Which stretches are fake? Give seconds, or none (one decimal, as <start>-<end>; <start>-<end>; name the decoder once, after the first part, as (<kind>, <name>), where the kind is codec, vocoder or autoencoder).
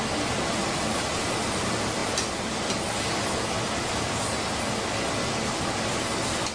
none